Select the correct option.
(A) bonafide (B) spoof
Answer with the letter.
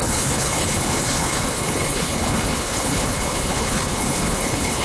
B